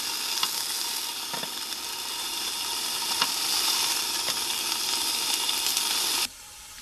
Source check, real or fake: real